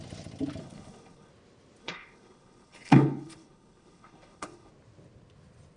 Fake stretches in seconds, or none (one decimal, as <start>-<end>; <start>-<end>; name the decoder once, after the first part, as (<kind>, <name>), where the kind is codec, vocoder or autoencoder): 0.6-1.3 (codec, HILCodec); 1.8-4.7